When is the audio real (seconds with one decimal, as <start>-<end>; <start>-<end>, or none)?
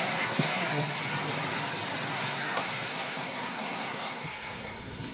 1.0-2.1